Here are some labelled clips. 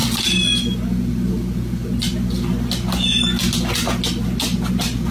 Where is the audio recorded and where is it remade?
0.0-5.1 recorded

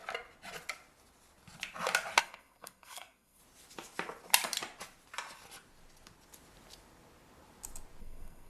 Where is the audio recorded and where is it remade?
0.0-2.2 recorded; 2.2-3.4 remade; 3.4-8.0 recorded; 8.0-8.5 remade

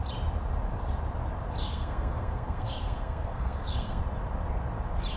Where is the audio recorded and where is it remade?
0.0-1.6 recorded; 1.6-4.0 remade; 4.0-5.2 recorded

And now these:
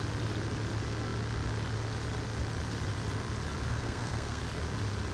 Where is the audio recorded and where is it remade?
0.0-3.7 recorded; 3.7-4.4 remade; 4.4-5.1 recorded